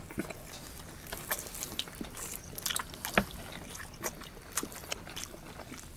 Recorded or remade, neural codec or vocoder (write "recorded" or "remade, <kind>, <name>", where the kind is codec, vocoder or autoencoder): recorded